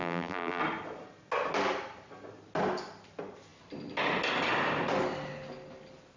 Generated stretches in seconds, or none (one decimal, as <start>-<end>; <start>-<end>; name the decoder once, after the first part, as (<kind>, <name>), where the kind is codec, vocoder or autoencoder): 0.0-0.6 (vocoder, BigVGAN v2)